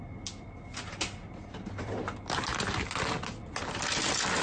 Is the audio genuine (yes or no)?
yes